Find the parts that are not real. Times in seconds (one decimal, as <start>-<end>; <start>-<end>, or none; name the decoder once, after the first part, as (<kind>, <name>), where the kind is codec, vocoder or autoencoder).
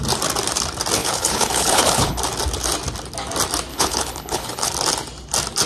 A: 1.0-2.2 (codec, HILCodec); 3.7-4.7